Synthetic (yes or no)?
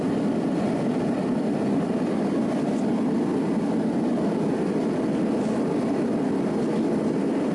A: yes